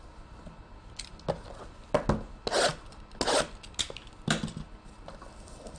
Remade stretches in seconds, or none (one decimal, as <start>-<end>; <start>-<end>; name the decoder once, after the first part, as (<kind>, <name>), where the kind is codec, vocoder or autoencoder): none